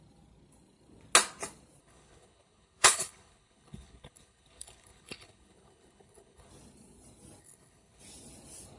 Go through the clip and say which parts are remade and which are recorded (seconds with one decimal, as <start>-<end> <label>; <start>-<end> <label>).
0.0-1.8 recorded; 1.8-6.5 remade; 6.5-7.4 recorded; 7.4-8.0 remade; 8.0-8.8 recorded